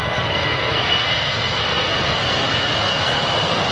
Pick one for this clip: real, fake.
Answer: fake